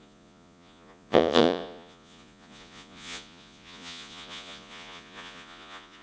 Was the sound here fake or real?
fake